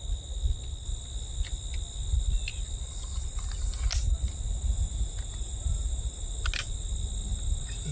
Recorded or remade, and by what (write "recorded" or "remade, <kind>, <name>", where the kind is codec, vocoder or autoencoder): recorded